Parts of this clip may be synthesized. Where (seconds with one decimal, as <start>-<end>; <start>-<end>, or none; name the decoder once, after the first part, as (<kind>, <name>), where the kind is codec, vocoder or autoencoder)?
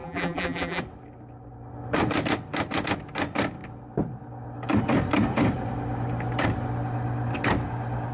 0.0-0.8 (vocoder, BigVGAN v2)